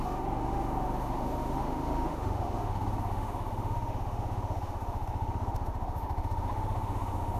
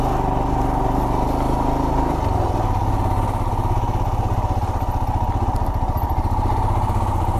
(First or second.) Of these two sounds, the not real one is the first